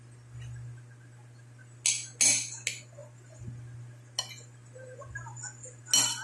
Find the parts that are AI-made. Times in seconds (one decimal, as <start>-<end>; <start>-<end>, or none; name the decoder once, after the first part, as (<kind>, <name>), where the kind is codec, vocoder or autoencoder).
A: none